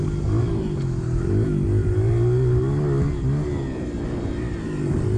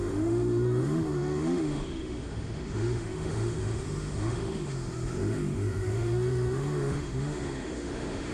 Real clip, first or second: first